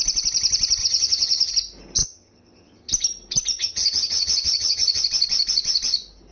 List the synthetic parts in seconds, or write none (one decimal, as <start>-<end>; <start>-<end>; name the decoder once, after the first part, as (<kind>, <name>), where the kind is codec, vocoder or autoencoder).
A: 0.8-1.5 (vocoder, HiFi-GAN); 2.0-2.9; 3.6-5.0